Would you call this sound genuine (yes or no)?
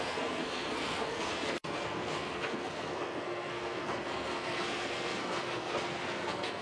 no